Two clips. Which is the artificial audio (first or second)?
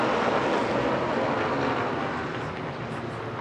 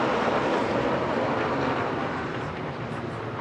second